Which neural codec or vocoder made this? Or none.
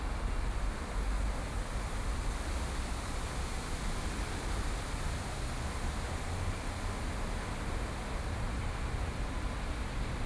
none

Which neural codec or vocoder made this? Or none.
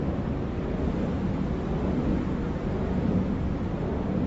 none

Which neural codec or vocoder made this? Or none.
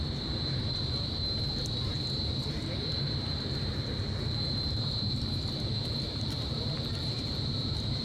vocoder, BigVGAN v2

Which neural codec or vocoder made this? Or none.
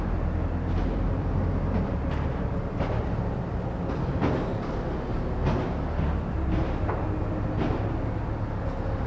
none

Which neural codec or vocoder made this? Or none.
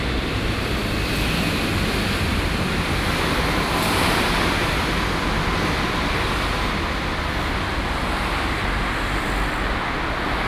none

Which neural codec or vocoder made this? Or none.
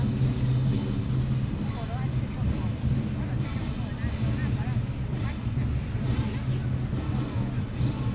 none